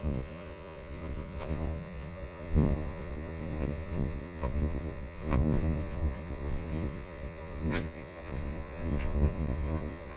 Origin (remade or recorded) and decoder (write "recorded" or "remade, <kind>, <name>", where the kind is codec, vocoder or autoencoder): remade, vocoder, Vocos